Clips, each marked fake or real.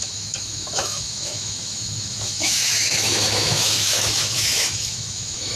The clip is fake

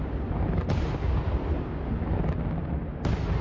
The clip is real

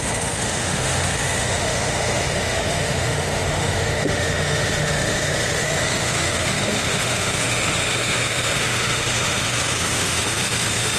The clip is fake